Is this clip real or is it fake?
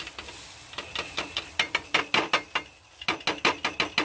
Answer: real